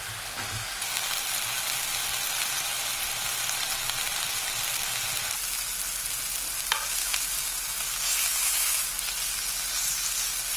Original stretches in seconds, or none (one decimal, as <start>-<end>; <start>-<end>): 0.0-7.0; 8.8-10.6